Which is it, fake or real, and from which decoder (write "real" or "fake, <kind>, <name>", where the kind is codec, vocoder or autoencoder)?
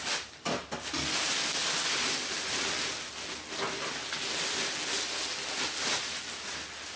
real